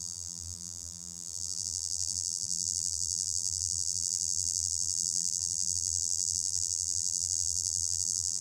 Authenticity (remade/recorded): remade